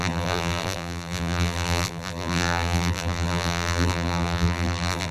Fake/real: fake